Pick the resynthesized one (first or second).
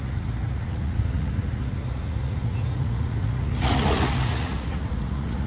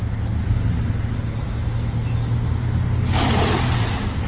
first